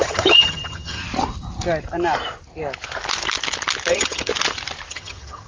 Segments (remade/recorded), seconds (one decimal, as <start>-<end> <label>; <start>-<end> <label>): 0.0-1.0 remade; 1.0-3.9 recorded; 3.9-4.3 remade; 4.3-4.9 recorded; 4.9-5.5 remade